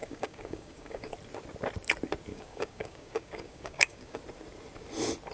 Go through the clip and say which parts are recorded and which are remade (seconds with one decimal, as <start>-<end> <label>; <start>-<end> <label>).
0.0-1.1 remade; 1.1-2.3 recorded; 2.3-4.2 remade; 4.2-5.3 recorded